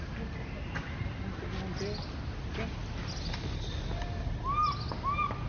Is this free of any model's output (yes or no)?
yes